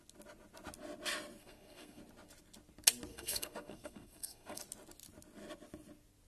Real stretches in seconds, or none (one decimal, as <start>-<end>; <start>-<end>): 0.0-1.4; 2.0-3.1; 4.6-6.3